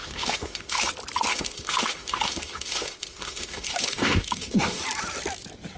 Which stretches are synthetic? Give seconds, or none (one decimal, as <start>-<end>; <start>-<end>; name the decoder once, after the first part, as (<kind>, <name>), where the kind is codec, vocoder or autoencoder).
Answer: 0.0-0.9 (autoencoder, DAC-VAE); 1.3-4.8